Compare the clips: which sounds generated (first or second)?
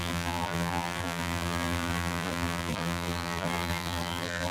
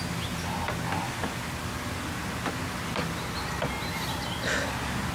first